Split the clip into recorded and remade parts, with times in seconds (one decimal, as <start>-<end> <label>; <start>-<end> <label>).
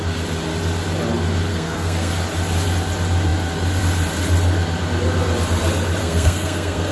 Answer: 0.0-1.5 recorded; 1.5-2.1 remade; 2.1-6.0 recorded; 6.0-6.9 remade